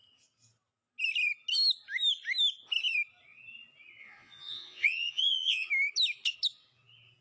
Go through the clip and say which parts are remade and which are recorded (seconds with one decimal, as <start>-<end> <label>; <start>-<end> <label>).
0.0-4.0 recorded; 4.0-5.7 remade; 5.7-7.2 recorded